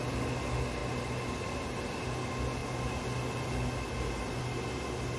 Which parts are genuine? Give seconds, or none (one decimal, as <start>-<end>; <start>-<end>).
0.0-5.2

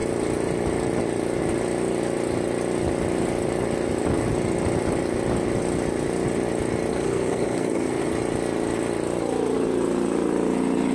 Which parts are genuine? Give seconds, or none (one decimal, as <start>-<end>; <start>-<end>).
0.0-6.9; 8.1-10.9